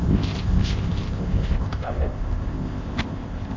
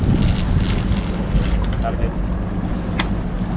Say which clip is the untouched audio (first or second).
second